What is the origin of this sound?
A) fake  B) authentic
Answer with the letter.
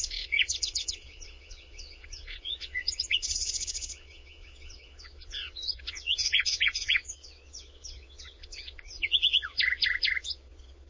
A